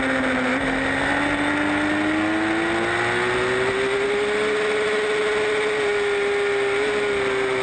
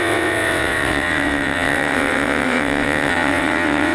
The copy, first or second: second